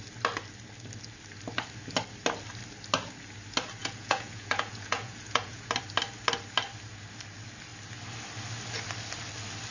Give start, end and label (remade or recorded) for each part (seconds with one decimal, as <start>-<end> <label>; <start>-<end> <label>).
0.0-3.8 recorded; 3.8-5.7 remade; 5.7-9.7 recorded